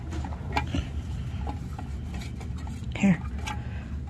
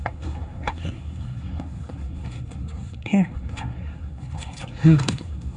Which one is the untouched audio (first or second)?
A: first